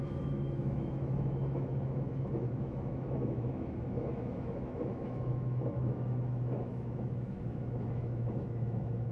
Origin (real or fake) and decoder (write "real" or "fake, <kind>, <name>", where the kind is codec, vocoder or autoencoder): fake, autoencoder, DAC-VAE